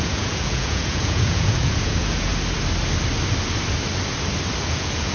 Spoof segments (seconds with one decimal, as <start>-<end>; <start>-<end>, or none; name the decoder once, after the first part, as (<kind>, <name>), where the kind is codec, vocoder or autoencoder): 0.0-2.3 (vocoder, Vocos); 4.6-5.1